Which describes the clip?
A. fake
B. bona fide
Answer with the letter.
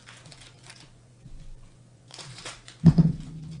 A